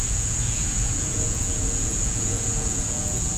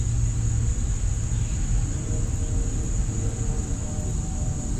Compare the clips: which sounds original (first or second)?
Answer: second